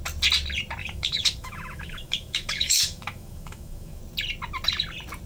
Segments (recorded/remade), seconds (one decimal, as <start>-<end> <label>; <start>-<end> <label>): 0.0-0.8 recorded; 0.8-4.0 remade; 4.0-5.3 recorded